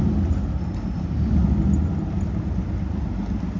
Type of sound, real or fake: real